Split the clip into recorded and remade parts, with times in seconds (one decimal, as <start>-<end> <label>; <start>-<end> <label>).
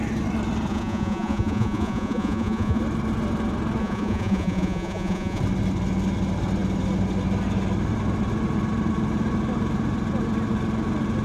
0.0-0.7 recorded; 0.7-2.8 remade; 2.8-3.8 recorded; 3.8-5.4 remade; 5.4-11.2 recorded